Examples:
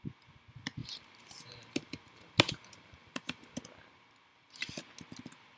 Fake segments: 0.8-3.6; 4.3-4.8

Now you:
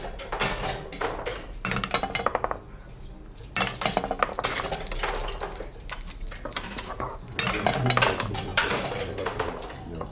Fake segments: 8.5-10.1

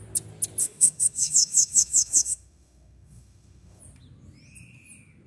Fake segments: 0.6-3.8

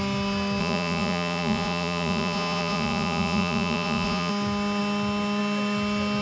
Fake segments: 0.6-4.3

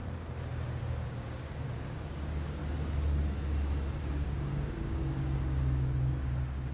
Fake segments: 0.8-2.6; 4.0-6.7

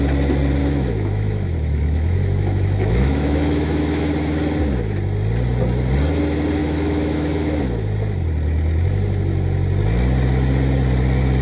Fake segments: 0.6-4.1; 6.6-7.6

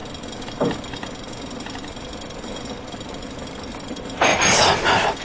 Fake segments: none